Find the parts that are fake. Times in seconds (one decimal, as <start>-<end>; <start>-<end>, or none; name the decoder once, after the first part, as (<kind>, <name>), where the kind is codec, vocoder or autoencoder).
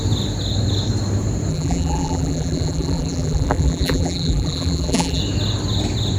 1.5-5.2 (vocoder, BigVGAN v2)